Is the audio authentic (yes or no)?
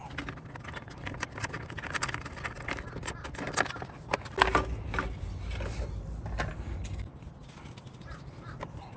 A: yes